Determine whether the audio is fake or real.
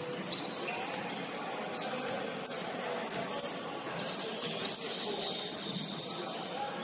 real